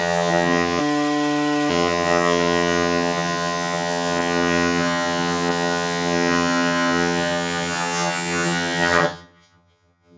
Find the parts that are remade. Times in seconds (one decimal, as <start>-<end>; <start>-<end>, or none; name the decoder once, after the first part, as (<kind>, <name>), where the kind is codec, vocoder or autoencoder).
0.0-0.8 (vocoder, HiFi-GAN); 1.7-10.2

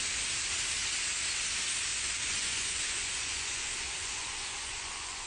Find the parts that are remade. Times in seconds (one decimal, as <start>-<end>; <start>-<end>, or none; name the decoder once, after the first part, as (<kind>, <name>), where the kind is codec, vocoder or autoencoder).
1.9-5.3 (vocoder, Vocos)

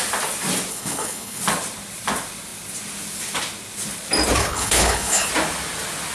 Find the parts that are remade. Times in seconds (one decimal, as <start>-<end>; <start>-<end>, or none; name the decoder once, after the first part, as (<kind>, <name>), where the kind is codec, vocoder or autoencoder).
0.7-1.4 (codec, HILCodec); 4.4-5.3

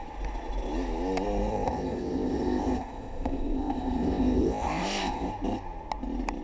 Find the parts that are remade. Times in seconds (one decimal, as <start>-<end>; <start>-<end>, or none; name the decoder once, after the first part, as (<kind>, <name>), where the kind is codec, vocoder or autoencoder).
1.5-5.3 (codec, ZipCodec)

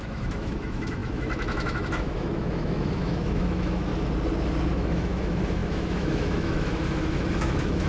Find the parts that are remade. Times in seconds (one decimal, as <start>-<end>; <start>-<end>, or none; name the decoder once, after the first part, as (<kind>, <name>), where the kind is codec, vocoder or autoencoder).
0.0-3.9 (autoencoder, DAC-VAE); 4.7-7.9

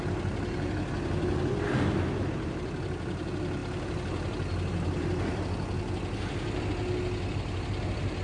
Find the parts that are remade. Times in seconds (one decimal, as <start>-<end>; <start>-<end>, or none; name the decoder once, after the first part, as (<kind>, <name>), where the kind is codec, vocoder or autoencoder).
none

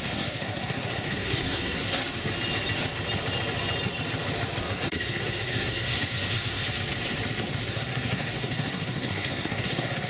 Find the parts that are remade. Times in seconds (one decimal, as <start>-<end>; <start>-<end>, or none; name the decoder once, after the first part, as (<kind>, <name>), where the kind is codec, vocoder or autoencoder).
0.0-2.0 (codec, SNAC); 4.6-6.6; 7.7-10.1